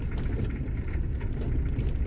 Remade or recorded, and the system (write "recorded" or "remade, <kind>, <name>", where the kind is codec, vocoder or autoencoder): recorded